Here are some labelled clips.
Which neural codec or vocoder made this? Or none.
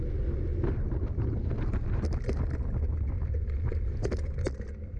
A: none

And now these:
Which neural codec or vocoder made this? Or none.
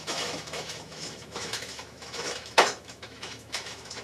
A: autoencoder, DAC-VAE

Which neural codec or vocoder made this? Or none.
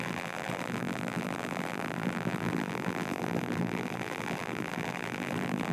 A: vocoder, BigVGAN v2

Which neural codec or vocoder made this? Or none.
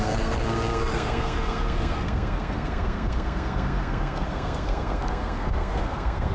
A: codec, SNAC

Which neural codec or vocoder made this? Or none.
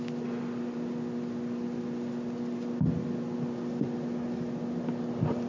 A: none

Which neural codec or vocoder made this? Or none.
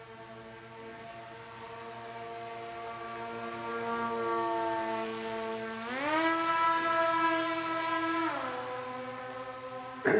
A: none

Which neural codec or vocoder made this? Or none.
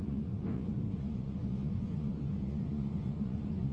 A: vocoder, Vocos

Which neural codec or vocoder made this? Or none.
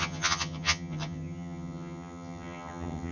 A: vocoder, HiFi-GAN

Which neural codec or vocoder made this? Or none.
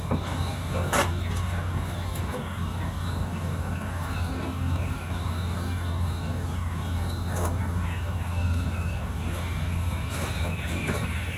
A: codec, DAC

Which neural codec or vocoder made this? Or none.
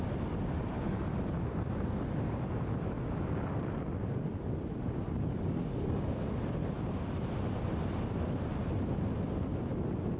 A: none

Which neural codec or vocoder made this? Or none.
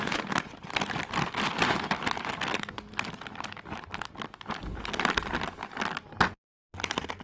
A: none